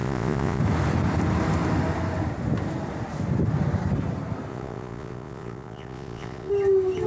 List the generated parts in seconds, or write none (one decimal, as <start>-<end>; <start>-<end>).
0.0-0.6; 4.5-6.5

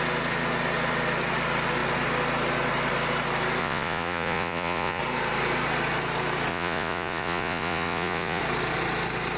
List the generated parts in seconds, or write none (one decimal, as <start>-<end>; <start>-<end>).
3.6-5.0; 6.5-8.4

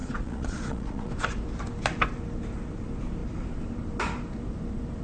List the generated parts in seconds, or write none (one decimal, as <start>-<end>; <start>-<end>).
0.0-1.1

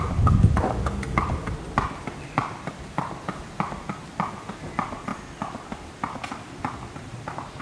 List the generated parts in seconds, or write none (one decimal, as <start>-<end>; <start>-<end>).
none